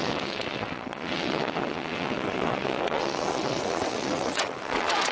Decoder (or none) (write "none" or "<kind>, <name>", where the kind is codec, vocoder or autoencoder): vocoder, WaveNeXt